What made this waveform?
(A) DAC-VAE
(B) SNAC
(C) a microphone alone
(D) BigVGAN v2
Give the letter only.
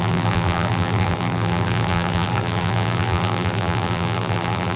D